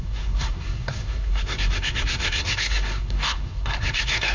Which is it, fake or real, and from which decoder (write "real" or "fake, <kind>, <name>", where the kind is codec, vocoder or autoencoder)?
fake, codec, SNAC